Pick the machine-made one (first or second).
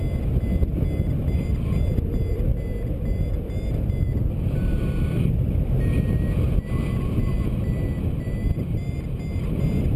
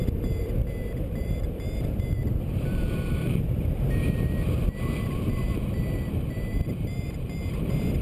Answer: second